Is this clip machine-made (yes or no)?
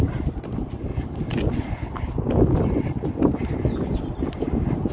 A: no